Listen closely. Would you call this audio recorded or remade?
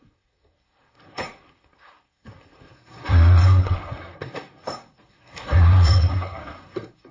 remade